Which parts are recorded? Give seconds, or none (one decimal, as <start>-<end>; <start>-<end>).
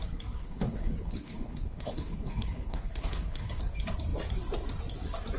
0.0-0.4; 3.6-5.4